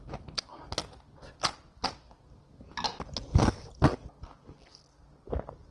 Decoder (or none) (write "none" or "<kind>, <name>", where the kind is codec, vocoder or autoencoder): none